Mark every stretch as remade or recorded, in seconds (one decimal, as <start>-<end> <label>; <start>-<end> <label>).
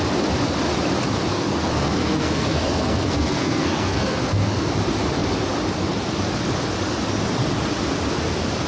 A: 0.0-1.3 recorded; 1.3-4.7 remade; 4.7-8.7 recorded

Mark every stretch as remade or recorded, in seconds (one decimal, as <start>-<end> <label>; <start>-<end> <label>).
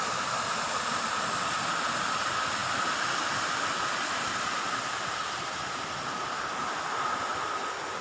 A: 0.0-8.0 recorded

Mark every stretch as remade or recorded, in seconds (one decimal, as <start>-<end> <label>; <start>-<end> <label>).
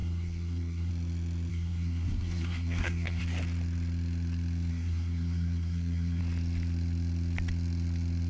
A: 0.0-0.9 remade; 0.9-1.5 recorded; 1.5-3.2 remade; 3.2-4.7 recorded; 4.7-6.2 remade; 6.2-8.3 recorded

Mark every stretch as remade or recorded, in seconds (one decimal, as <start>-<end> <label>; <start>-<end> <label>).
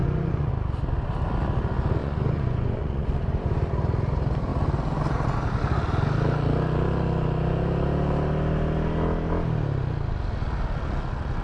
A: 0.0-0.5 remade; 0.5-2.0 recorded; 2.0-3.2 remade; 3.2-11.4 recorded